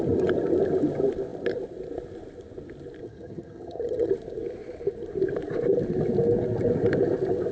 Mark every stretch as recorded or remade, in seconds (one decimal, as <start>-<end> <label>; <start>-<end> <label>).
0.0-3.0 recorded; 3.0-4.1 remade; 4.1-7.5 recorded